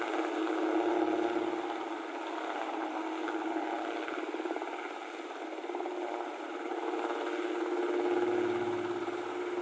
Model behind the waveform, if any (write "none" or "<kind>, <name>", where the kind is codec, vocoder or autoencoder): none